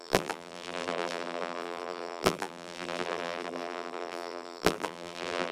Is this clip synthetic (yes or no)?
yes